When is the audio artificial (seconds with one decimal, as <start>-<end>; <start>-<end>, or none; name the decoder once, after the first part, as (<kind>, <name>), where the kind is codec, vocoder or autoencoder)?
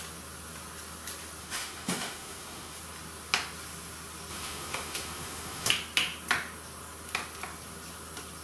1.4-2.8 (autoencoder, DAC-VAE); 4.3-5.7